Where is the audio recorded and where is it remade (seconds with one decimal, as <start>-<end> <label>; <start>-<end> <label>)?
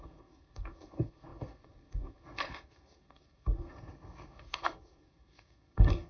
0.0-6.1 remade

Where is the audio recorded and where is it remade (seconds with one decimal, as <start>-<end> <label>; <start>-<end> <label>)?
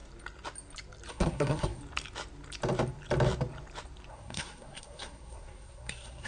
0.0-1.1 recorded; 1.1-1.8 remade; 1.8-4.1 recorded; 4.1-6.3 remade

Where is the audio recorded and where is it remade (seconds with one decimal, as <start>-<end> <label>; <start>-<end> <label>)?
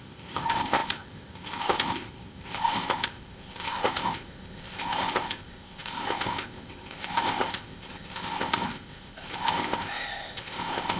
0.0-11.0 remade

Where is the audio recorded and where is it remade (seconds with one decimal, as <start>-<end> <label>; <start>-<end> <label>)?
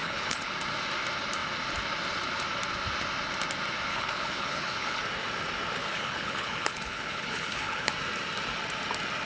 0.0-0.5 remade; 0.5-3.9 recorded; 3.9-5.0 remade; 5.0-5.8 recorded; 5.8-7.9 remade; 7.9-9.3 recorded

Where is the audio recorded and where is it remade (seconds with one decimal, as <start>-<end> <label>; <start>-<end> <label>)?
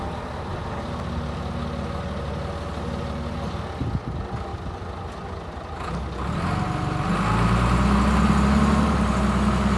0.0-9.8 recorded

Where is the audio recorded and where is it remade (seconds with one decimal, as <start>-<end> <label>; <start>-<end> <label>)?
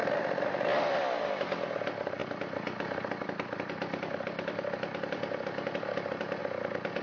0.0-1.0 remade; 1.0-2.2 recorded; 2.2-6.4 remade; 6.4-7.0 recorded